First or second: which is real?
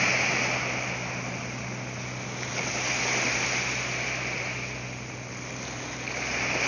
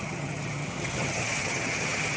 first